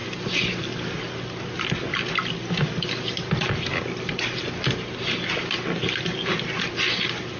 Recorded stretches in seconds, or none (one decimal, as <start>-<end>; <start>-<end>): 0.0-7.4

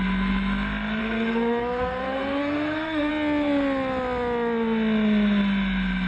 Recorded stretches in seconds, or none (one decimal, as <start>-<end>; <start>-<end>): 0.0-1.0; 3.1-6.1